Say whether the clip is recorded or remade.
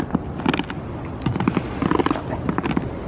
recorded